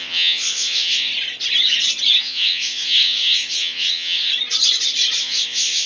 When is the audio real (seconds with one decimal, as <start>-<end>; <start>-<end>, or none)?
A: 1.1-2.2; 4.3-5.2